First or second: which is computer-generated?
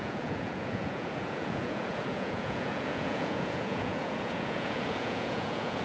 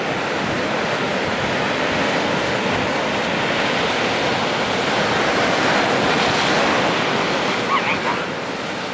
first